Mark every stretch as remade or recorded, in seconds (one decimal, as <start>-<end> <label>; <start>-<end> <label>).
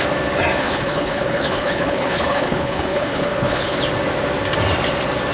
0.0-0.6 recorded; 0.6-3.8 remade; 3.8-5.3 recorded